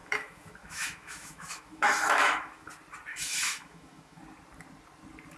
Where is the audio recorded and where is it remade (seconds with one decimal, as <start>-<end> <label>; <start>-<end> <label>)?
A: 0.0-2.7 remade; 2.7-3.1 recorded; 3.1-4.2 remade; 4.2-5.4 recorded